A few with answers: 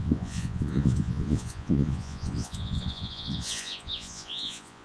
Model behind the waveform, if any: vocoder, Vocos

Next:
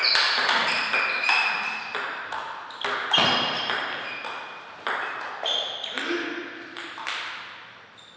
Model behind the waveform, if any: none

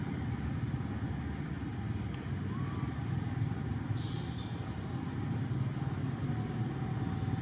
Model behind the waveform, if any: none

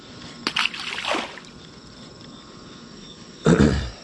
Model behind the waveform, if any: vocoder, BigVGAN v2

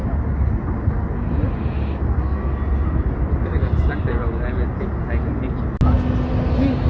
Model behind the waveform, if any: none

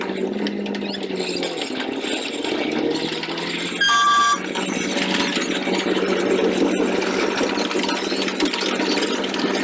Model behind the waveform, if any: none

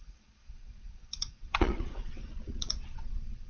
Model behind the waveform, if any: vocoder, Vocos